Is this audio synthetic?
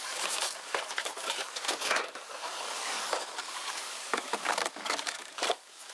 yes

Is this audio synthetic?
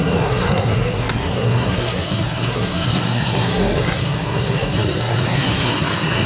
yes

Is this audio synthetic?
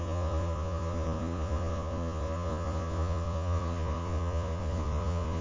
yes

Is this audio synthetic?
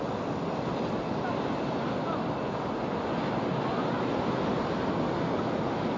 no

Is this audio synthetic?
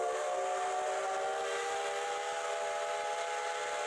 no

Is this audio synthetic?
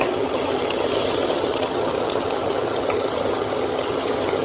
yes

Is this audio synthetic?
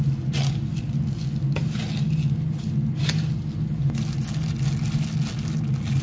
no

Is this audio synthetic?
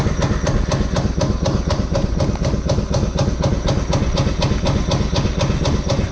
no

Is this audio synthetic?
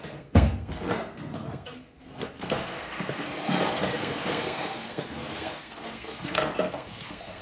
yes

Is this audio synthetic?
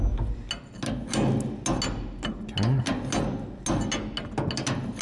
no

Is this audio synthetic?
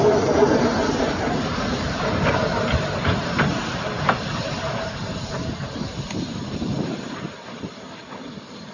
yes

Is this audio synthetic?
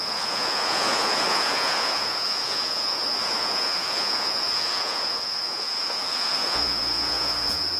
yes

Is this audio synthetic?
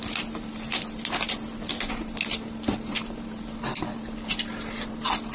no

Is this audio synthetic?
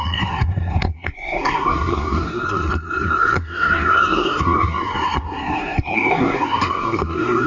yes